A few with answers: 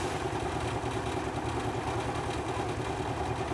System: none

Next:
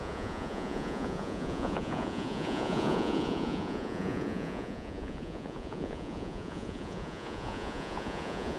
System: vocoder, Vocos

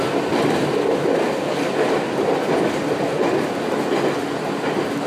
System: none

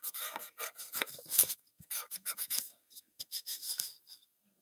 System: codec, SNAC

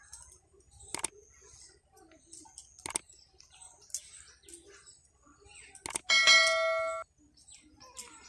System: none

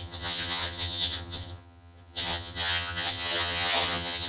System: vocoder, HiFi-GAN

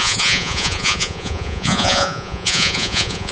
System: vocoder, Vocos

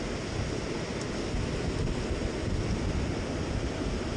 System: none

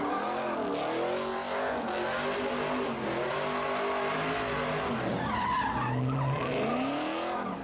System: none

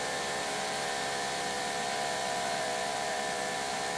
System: vocoder, BigVGAN v2